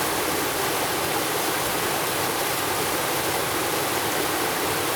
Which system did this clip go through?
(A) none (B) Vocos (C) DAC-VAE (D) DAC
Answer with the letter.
A